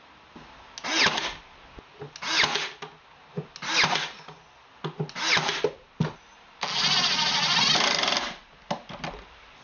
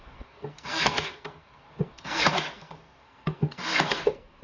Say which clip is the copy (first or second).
second